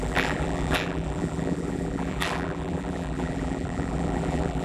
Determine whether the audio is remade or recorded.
remade